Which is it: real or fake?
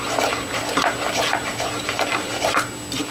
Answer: real